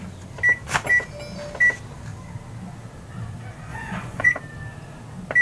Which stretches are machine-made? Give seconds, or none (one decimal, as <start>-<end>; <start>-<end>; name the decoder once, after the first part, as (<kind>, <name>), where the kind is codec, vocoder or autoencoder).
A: 3.7-4.3 (vocoder, Vocos)